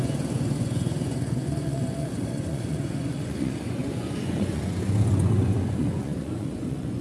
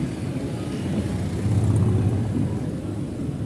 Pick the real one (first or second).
second